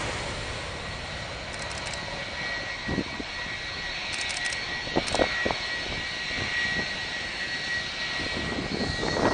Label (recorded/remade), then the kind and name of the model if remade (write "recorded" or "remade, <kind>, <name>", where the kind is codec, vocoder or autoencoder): recorded